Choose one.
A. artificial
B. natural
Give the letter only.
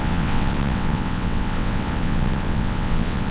A